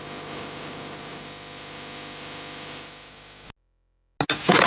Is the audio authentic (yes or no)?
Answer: yes